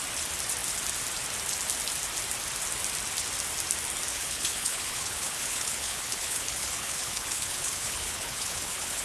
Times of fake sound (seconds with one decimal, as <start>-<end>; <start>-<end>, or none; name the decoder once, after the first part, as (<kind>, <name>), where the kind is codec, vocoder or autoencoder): 4.1-9.0 (codec, HILCodec)